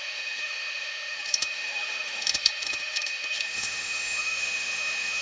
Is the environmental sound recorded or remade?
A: remade